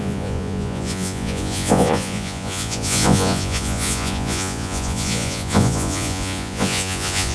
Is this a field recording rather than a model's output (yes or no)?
no